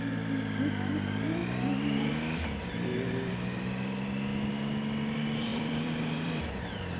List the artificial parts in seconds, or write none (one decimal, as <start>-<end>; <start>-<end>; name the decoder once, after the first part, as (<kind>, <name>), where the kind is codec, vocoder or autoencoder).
5.5-6.4 (vocoder, BigVGAN v2)